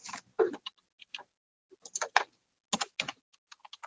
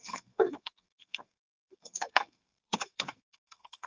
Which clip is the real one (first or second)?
first